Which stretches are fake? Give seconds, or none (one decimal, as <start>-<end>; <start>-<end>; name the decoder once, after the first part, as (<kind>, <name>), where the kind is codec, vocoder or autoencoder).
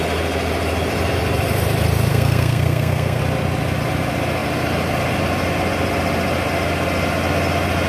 2.1-3.2 (codec, SNAC)